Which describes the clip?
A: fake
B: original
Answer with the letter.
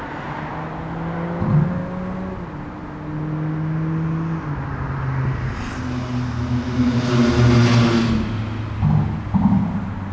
B